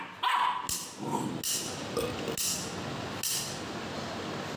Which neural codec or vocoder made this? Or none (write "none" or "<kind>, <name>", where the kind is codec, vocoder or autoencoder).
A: none